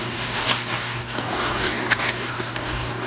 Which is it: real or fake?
fake